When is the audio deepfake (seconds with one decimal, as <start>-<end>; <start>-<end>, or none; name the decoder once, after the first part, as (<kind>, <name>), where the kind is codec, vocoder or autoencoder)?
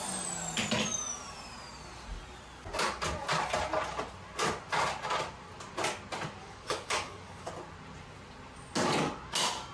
6.4-7.5 (codec, DAC)